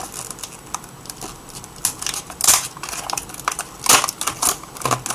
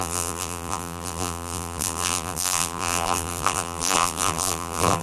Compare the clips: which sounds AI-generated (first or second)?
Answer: second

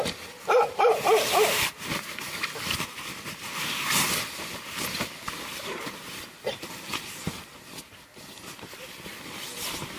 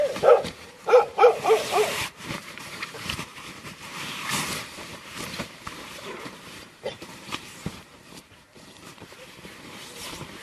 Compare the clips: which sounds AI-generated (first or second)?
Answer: second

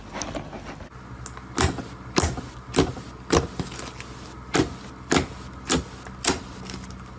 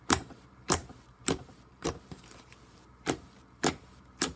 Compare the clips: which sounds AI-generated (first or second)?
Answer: second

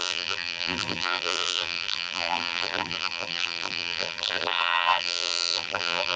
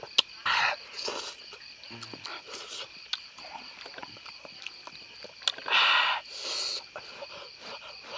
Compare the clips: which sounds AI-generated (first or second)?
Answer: first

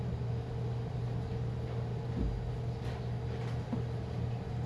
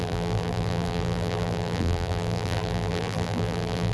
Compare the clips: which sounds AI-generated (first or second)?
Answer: second